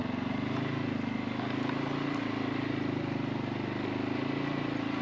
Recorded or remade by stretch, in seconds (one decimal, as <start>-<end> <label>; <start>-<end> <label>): 0.0-5.0 recorded